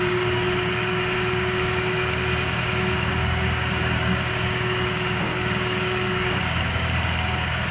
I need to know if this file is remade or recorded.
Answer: remade